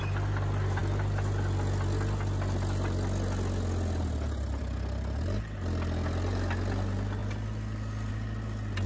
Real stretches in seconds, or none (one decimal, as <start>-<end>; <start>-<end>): 0.0-8.9